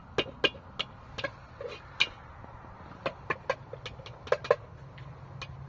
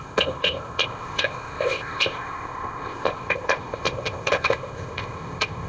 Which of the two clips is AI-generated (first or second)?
second